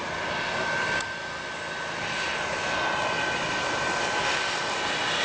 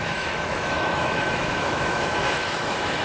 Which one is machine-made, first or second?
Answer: second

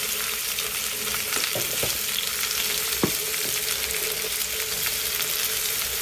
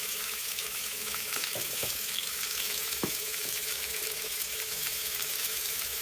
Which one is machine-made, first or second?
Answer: second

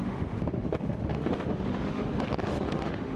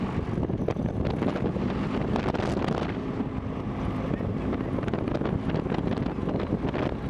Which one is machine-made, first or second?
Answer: first